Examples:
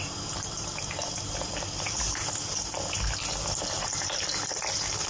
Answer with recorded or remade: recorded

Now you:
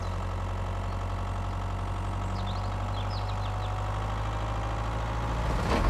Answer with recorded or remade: recorded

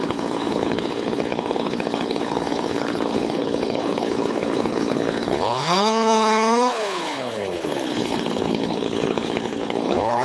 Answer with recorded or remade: remade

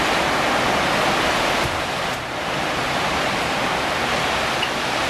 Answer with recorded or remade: recorded